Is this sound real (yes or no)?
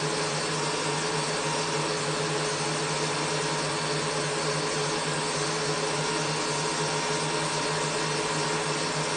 yes